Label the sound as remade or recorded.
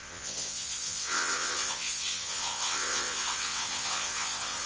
remade